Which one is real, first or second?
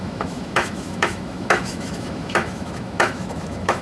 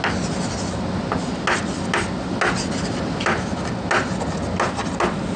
second